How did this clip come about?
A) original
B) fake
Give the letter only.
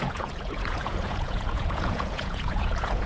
B